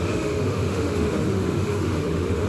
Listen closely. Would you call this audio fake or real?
fake